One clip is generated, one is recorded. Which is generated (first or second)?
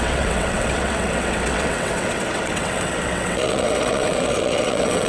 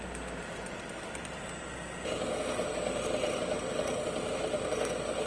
first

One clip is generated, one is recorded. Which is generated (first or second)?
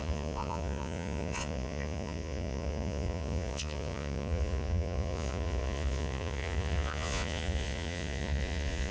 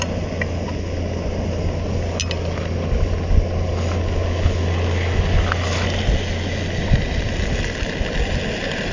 first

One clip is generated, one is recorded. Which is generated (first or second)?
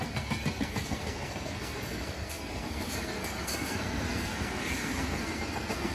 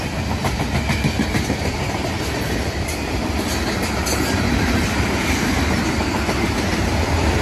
first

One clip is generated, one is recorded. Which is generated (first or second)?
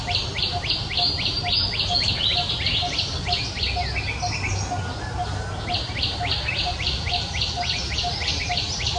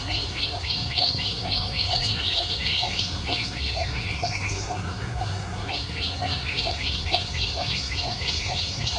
second